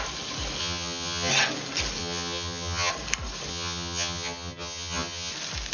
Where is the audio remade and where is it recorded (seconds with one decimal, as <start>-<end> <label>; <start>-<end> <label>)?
0.0-0.6 recorded; 0.6-1.3 remade; 1.3-2.0 recorded; 2.0-2.9 remade; 2.9-3.5 recorded; 3.5-5.3 remade; 5.3-5.7 recorded